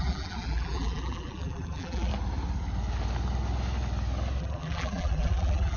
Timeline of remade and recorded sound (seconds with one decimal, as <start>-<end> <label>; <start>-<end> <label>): 0.0-2.1 remade; 2.1-4.4 recorded; 4.4-5.8 remade